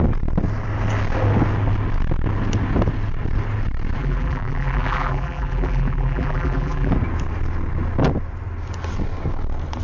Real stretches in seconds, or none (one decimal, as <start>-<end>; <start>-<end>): 0.0-4.0; 6.9-9.8